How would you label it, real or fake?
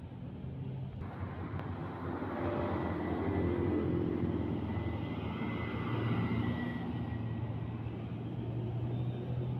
real